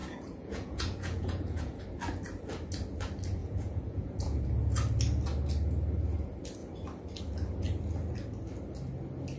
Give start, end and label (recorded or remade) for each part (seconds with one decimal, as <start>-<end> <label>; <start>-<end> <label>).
0.0-1.8 remade; 1.8-3.4 recorded; 3.4-4.4 remade; 4.4-9.4 recorded

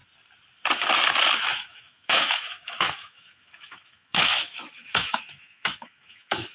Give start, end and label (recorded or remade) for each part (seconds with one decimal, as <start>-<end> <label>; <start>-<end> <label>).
0.0-1.4 recorded; 1.4-6.5 remade

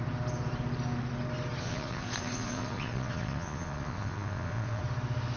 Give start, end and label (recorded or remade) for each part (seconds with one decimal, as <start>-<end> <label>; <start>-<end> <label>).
0.0-1.6 recorded; 1.6-4.8 remade; 4.8-5.4 recorded

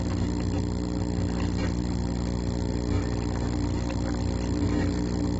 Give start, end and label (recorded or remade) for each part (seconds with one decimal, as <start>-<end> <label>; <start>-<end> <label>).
0.0-5.4 recorded

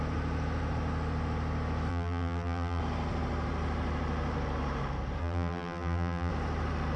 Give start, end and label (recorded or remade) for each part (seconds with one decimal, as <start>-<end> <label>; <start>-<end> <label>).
0.0-1.9 recorded; 1.9-2.8 remade; 2.8-5.2 recorded; 5.2-6.3 remade; 6.3-7.0 recorded

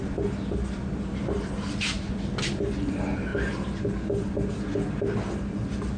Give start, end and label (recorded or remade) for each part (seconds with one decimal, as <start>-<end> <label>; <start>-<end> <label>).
0.0-6.0 recorded

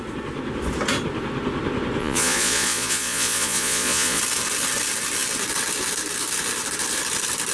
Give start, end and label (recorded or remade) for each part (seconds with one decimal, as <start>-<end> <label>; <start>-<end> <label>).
0.0-2.0 recorded; 2.0-4.2 remade; 4.2-7.5 recorded